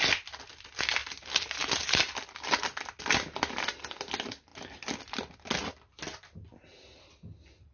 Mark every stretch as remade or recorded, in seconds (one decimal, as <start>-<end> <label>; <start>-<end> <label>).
0.0-7.7 recorded